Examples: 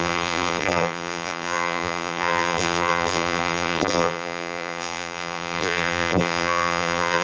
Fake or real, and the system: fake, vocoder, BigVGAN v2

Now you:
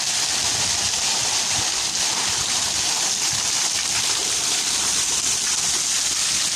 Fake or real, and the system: real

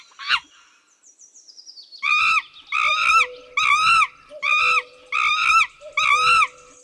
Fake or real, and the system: real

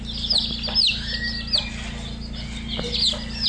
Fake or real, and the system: real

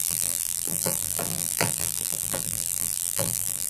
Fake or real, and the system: fake, vocoder, BigVGAN v2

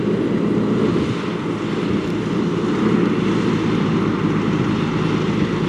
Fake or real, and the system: real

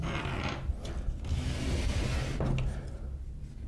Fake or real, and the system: real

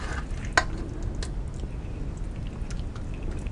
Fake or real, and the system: real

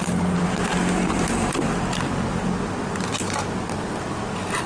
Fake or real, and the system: real